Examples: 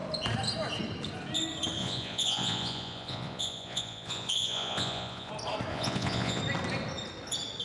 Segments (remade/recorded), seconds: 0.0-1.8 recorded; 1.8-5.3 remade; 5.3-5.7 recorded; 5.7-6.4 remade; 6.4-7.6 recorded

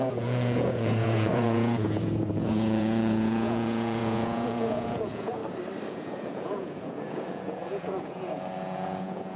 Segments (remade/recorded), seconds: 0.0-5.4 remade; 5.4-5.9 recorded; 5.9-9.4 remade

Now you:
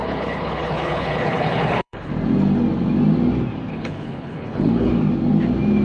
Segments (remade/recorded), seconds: 0.0-2.1 remade; 2.1-3.7 recorded; 3.7-4.9 remade; 4.9-5.8 recorded

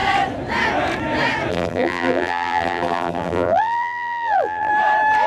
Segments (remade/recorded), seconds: 0.0-1.5 recorded; 1.5-4.7 remade; 4.7-5.3 recorded